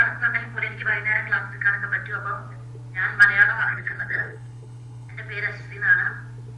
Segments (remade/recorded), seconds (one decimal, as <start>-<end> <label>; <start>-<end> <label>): 0.0-3.6 recorded; 3.6-5.1 remade; 5.1-6.6 recorded